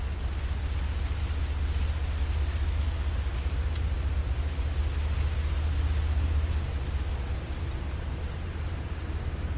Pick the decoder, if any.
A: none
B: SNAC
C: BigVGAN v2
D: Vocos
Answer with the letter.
A